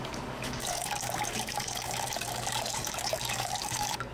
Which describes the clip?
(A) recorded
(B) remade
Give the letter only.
B